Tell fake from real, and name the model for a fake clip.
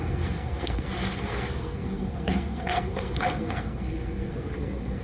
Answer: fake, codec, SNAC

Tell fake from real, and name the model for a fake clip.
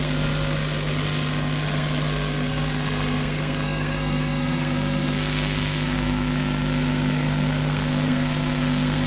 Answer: fake, codec, SNAC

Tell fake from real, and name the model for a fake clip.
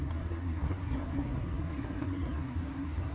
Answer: fake, codec, SNAC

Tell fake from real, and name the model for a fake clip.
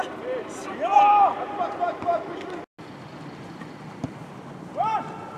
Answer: real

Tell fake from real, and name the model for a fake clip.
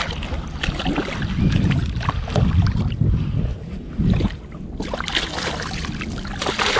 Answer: real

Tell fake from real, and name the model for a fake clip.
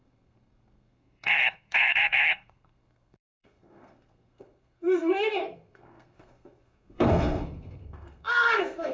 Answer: fake, codec, SNAC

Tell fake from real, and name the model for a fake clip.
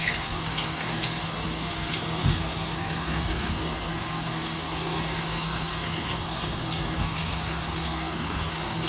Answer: fake, codec, SNAC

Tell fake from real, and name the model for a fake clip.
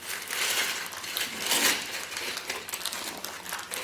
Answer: real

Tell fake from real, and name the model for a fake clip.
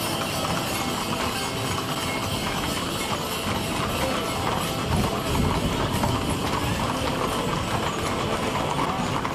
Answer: real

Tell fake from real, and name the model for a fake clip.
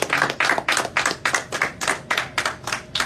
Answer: real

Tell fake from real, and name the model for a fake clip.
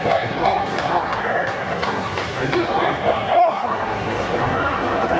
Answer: fake, codec, SNAC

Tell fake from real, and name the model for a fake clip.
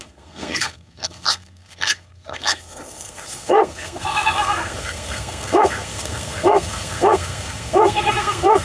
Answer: fake, codec, SNAC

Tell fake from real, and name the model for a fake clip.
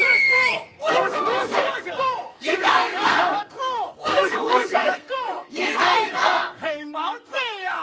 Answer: fake, codec, SNAC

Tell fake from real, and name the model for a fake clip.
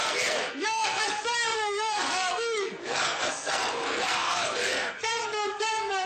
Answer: fake, codec, SNAC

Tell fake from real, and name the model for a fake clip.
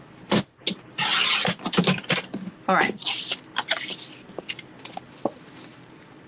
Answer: real